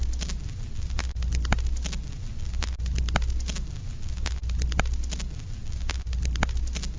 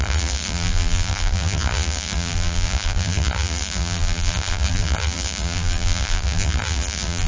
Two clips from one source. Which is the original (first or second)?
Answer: first